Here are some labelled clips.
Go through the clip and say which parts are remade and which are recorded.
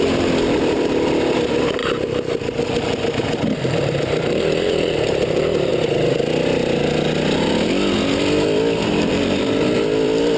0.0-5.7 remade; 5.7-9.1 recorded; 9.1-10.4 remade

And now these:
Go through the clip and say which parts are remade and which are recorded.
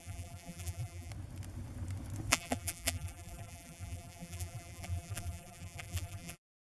0.0-1.1 remade; 1.1-2.3 recorded; 2.3-6.7 remade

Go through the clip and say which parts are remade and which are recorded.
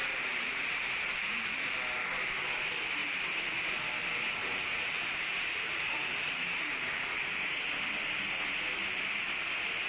0.0-1.6 remade; 1.6-3.0 recorded; 3.0-3.6 remade; 3.6-4.4 recorded; 4.4-7.7 remade; 7.7-9.9 recorded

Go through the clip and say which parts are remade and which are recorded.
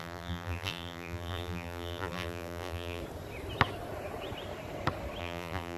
0.0-3.0 remade; 3.0-5.2 recorded; 5.2-5.8 remade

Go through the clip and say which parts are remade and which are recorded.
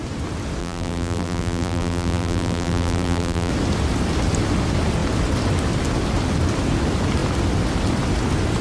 0.0-0.6 recorded; 0.6-3.5 remade; 3.5-8.6 recorded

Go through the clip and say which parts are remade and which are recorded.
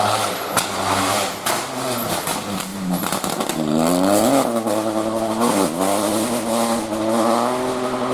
0.0-8.1 recorded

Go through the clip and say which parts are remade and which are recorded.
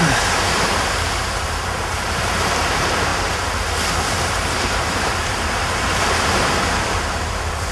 0.0-3.1 remade; 3.1-4.8 recorded; 4.8-7.7 remade